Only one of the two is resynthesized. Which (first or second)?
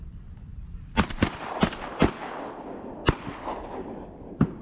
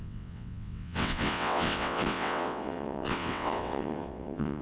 second